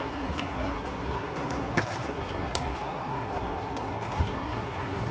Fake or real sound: fake